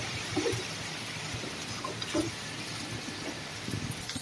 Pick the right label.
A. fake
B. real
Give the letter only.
B